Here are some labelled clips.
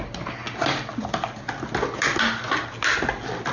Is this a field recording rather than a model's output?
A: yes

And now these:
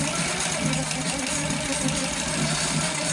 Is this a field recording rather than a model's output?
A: yes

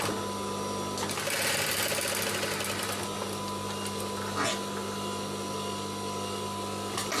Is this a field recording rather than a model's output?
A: yes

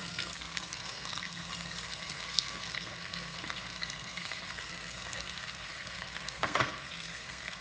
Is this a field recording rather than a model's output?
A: no